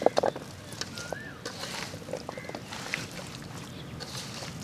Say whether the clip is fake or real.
real